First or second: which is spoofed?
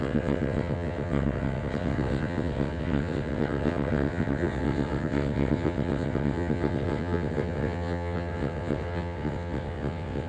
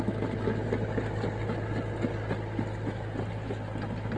first